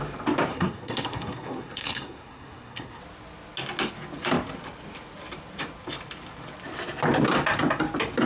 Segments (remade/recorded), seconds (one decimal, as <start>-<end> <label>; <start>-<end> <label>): 0.0-0.5 recorded; 0.5-3.0 remade; 3.0-8.3 recorded